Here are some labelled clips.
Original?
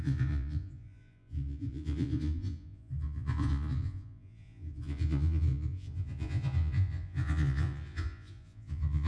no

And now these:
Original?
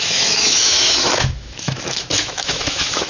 no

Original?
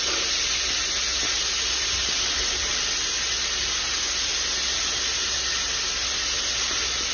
yes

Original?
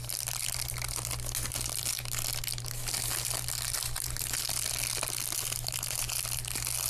yes